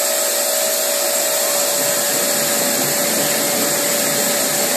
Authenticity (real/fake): real